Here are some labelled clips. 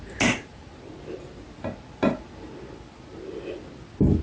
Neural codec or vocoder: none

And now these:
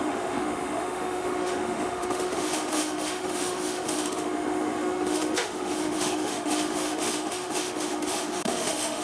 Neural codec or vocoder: autoencoder, DAC-VAE